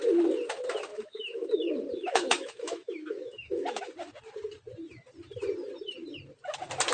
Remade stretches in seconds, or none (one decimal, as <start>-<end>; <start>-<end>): 0.9-1.5; 2.0-3.8

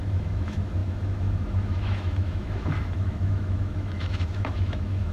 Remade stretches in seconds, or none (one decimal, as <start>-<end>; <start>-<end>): 0.0-5.1

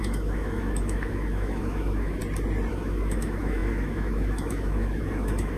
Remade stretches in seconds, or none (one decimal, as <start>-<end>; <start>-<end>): 0.0-2.2; 2.7-5.6

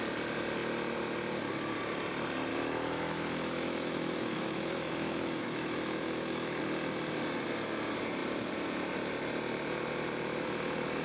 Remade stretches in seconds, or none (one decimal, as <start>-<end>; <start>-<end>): 2.5-6.6

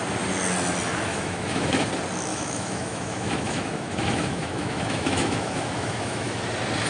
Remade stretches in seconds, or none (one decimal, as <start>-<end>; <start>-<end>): 1.1-1.9; 2.3-6.4

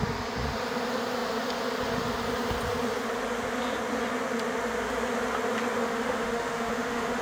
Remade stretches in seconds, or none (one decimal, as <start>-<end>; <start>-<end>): 5.8-7.2